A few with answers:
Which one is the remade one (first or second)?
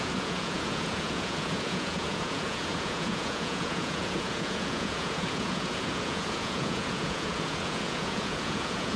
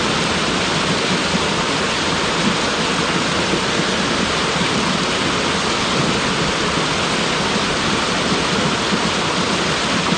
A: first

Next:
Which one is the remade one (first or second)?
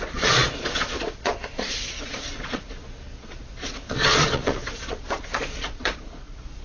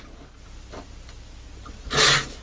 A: first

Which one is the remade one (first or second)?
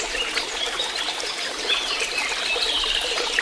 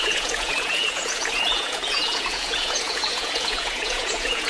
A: second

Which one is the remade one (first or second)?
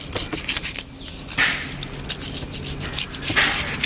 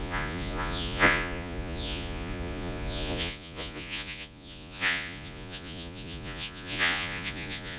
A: second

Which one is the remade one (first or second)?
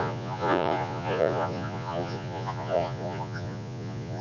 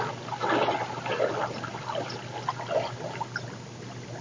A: first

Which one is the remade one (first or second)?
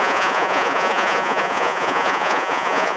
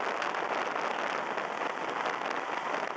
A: first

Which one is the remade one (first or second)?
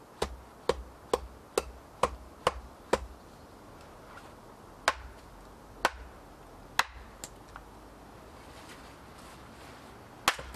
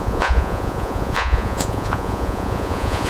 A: second